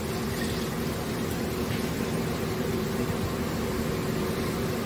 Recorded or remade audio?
recorded